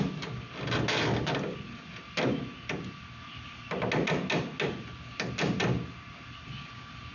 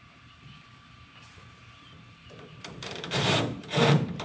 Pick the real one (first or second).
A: first